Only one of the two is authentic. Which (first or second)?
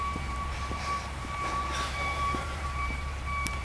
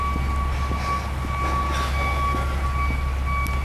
second